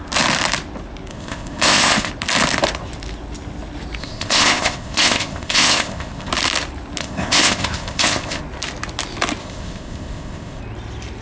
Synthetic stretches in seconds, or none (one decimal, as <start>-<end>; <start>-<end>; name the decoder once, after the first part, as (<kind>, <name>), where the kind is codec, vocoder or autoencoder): 1.1-2.1 (codec, ZipCodec); 4.0-6.3; 7.0-8.4; 9.4-10.6